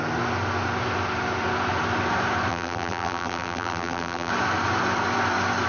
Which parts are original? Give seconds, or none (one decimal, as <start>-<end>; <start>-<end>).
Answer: 0.0-2.5; 4.3-5.7